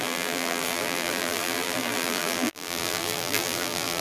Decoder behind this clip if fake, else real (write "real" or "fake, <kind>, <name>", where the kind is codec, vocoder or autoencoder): fake, vocoder, BigVGAN v2